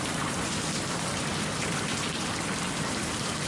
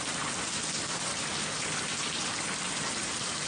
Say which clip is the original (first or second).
second